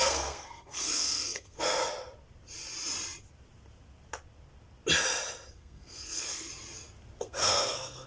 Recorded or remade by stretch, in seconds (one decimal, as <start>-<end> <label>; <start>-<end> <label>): 0.0-1.8 remade; 1.8-5.5 recorded; 5.5-6.5 remade; 6.5-7.2 recorded; 7.2-8.1 remade